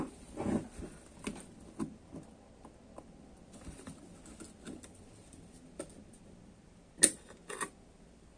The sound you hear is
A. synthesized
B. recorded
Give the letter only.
B